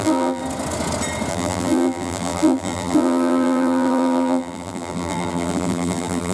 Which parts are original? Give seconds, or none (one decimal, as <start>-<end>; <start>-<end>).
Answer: 0.4-1.3